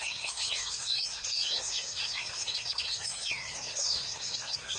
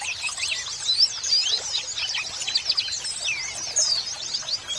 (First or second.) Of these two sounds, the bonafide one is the second